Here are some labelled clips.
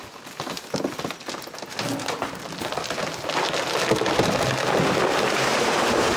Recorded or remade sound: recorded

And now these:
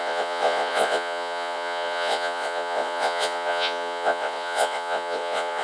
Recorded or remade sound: remade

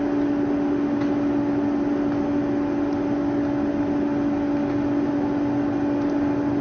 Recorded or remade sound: recorded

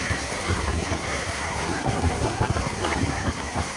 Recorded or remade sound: remade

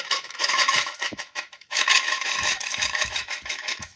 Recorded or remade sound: remade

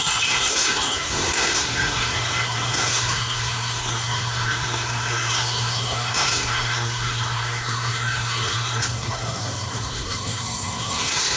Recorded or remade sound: remade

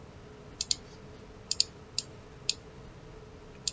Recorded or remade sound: recorded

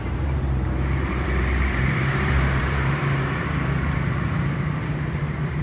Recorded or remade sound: remade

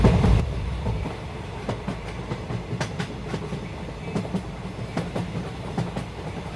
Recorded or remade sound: recorded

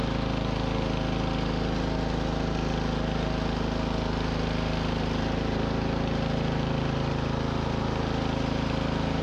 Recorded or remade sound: recorded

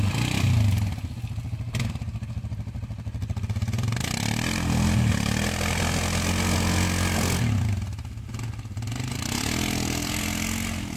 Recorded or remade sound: recorded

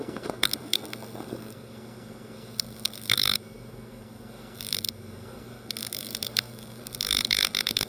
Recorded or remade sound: remade